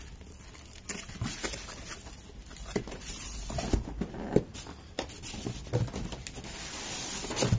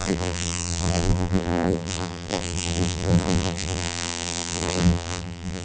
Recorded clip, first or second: first